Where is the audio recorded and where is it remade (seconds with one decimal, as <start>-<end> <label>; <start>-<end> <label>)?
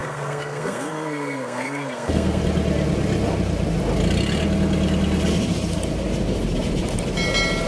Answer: 0.0-2.4 remade; 2.4-7.7 recorded